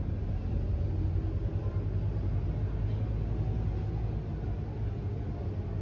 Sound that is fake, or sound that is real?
real